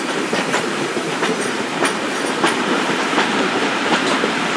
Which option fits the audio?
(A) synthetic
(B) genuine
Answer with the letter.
A